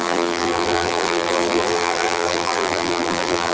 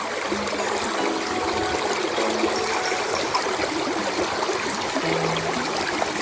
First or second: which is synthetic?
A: first